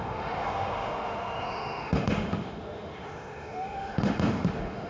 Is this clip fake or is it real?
fake